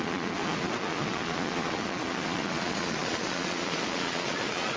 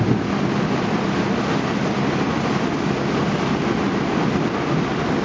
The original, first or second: second